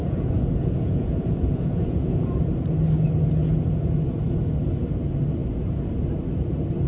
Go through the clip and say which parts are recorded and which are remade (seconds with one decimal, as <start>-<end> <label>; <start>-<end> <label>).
0.0-2.4 remade; 2.4-3.4 recorded; 3.4-4.5 remade; 4.5-6.9 recorded